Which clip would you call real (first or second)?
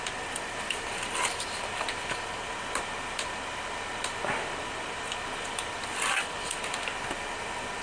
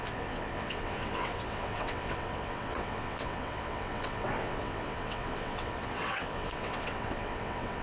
first